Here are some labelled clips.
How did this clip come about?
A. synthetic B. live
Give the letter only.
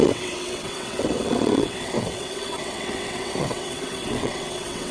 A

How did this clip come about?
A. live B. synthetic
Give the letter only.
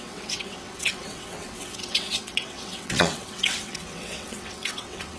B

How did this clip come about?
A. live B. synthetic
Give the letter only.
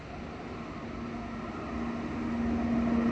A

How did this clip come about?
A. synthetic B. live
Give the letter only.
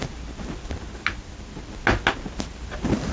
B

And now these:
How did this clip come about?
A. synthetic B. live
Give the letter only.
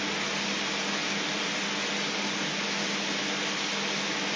B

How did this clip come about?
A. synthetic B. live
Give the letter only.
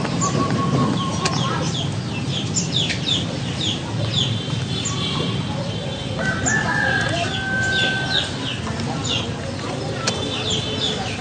B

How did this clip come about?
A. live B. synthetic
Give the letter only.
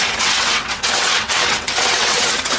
B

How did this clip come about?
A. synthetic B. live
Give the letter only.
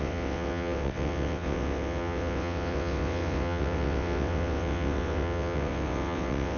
A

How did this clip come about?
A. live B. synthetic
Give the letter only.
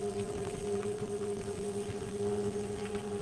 B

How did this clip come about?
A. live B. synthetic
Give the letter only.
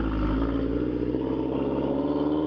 A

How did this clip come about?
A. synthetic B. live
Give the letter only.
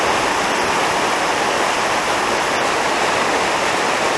B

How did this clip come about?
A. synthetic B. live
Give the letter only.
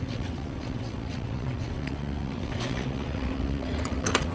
A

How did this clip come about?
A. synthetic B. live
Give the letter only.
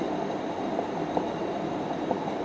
B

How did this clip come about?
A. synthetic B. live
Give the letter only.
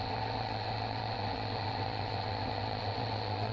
A